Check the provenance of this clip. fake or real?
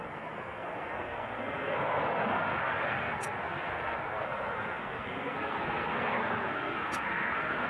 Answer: fake